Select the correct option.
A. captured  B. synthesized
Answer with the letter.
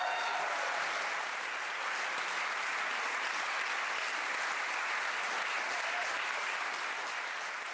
A